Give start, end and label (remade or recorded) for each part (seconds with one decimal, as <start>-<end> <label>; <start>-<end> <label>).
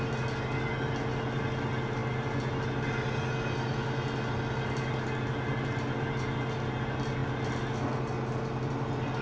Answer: 0.0-9.2 recorded